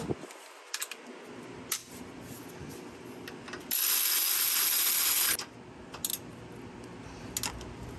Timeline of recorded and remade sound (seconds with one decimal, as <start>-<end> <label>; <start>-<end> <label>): 0.0-8.0 recorded